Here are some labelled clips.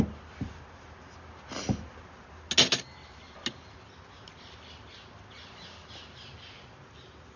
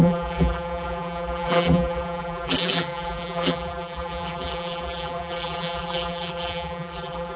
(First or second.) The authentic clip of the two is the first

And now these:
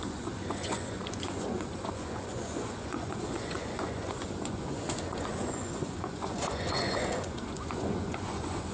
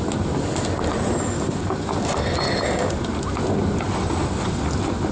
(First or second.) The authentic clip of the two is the second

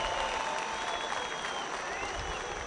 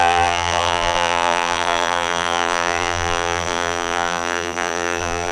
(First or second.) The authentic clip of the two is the first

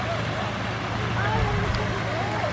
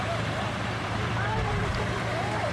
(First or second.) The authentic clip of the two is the first